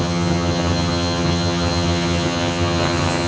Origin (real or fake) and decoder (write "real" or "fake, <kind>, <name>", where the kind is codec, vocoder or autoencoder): fake, vocoder, HiFi-GAN